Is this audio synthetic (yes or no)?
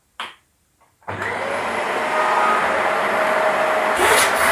no